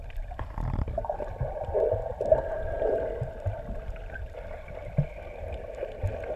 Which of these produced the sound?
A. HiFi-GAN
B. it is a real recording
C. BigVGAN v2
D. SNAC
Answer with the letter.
B